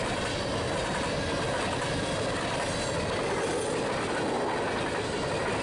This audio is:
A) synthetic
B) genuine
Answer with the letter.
B